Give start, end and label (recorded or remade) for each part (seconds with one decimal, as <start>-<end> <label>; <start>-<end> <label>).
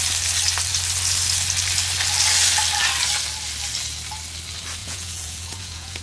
0.0-4.8 recorded; 4.8-6.0 remade